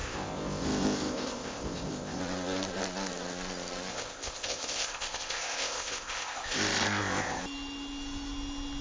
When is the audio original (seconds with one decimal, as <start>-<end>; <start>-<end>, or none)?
2.2-3.9; 7.4-8.8